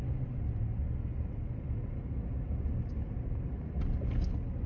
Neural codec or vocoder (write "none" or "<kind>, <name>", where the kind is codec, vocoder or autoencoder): none